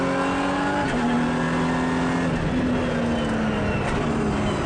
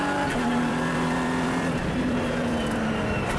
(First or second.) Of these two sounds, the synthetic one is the second